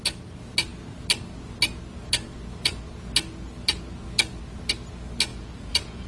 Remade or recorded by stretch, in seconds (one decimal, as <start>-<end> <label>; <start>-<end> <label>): 0.0-5.3 recorded; 5.3-6.1 remade